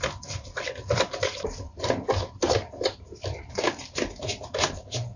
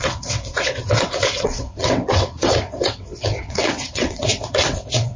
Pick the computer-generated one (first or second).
second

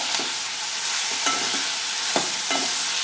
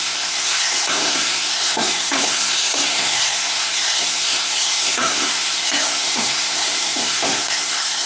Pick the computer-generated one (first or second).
second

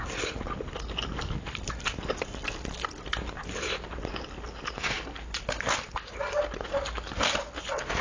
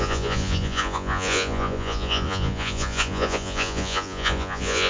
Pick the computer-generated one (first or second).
second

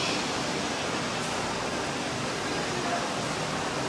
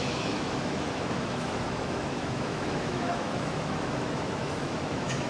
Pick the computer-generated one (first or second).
second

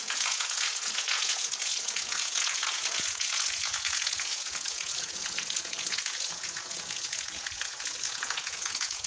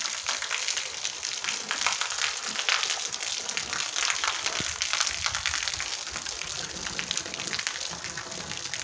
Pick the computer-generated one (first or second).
first